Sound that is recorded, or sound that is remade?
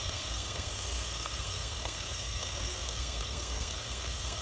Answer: remade